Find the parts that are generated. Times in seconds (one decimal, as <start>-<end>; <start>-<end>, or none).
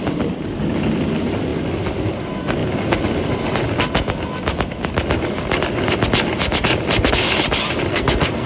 7.9-8.5